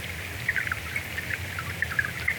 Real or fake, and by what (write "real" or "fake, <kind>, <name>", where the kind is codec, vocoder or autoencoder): fake, vocoder, BigVGAN v2